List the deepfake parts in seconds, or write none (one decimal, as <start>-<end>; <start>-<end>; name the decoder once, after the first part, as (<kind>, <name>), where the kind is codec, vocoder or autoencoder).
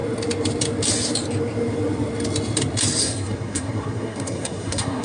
3.0-5.0 (codec, SNAC)